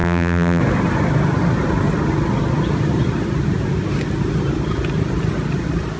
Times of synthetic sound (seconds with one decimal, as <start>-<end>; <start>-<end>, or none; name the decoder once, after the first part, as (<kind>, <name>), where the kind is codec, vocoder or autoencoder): 0.0-0.6 (vocoder, BigVGAN v2)